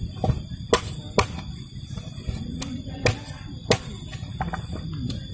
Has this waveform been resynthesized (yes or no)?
no